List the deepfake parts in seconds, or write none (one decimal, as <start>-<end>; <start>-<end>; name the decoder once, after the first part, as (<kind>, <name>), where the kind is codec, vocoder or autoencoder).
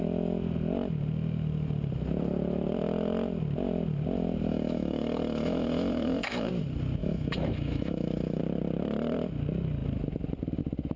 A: 4.5-6.5 (autoencoder, DAC-VAE); 7.0-8.4